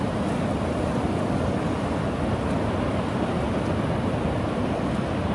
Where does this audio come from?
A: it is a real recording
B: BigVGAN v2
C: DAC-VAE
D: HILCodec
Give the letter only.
A